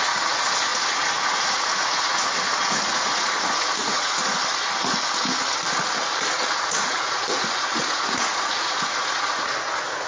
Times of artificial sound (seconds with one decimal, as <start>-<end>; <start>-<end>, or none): 0.0-4.2; 6.5-10.1